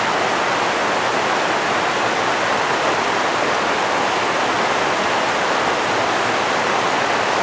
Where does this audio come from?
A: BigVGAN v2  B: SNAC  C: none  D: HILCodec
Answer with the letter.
C